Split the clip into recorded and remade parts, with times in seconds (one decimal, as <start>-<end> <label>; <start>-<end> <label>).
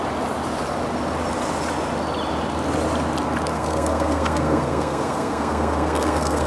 0.0-3.5 recorded; 3.5-6.5 remade